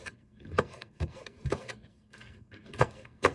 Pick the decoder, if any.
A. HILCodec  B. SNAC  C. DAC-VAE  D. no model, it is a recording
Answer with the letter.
B